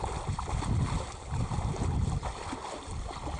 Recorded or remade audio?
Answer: recorded